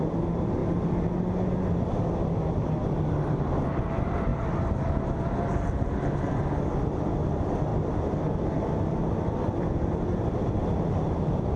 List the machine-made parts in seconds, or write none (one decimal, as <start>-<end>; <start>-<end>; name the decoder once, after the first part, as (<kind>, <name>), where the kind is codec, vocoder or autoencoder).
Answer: none